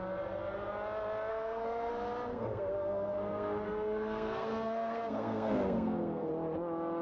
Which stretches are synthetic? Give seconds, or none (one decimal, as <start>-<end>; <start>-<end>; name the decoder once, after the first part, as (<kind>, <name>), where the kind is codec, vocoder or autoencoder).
1.3-1.9 (codec, SNAC); 2.3-6.3